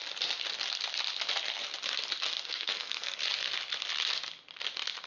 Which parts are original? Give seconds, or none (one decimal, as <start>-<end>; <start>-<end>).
0.0-2.4; 3.2-5.1